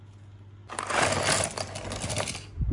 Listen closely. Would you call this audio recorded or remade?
recorded